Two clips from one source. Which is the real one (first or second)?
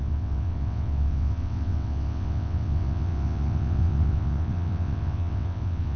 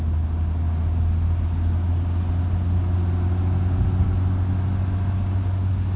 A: second